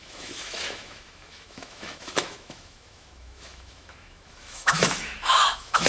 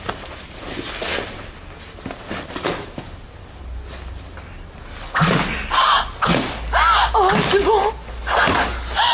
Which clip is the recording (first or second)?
second